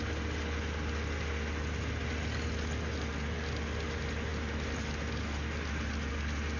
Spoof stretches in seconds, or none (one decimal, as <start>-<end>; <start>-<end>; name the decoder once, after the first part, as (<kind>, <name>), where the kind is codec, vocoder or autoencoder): none